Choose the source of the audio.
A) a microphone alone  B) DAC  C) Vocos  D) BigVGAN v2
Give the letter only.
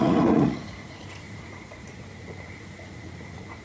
C